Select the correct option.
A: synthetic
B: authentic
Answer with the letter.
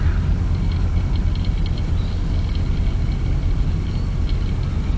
B